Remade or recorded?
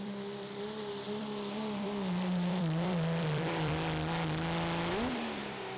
remade